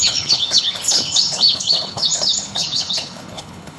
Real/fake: fake